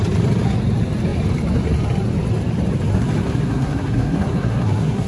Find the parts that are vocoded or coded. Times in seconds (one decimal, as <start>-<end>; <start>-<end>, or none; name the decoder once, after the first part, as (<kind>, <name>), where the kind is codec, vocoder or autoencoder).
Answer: 2.9-5.1 (codec, SNAC)